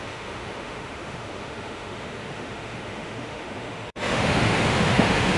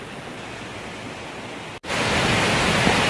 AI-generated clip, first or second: first